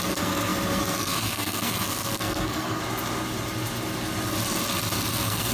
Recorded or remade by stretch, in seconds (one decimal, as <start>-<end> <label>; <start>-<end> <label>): 0.0-2.8 remade; 2.8-5.1 recorded; 5.1-5.5 remade